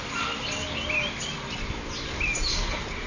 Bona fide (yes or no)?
yes